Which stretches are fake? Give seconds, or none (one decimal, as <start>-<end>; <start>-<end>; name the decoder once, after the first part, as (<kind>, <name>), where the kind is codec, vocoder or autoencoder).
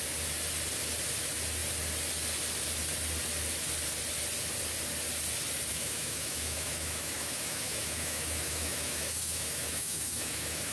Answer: 5.7-10.7 (autoencoder, DAC-VAE)